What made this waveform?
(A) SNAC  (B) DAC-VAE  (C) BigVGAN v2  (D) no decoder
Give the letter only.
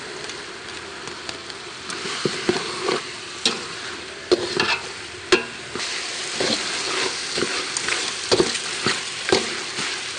D